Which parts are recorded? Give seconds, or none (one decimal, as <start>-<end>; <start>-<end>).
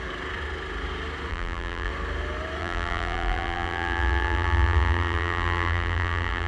0.0-1.3; 1.9-2.6